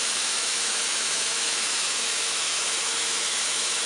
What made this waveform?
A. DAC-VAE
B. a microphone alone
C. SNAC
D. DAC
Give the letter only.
A